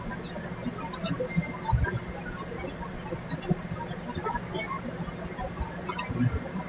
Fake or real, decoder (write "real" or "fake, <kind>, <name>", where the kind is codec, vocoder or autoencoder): real